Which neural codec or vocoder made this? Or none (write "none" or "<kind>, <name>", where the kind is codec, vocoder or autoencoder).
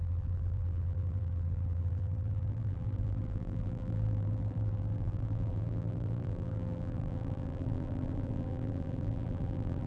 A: vocoder, BigVGAN v2